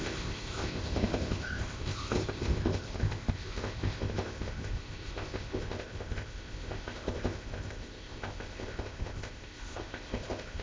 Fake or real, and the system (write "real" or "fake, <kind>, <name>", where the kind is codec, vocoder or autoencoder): fake, codec, ZipCodec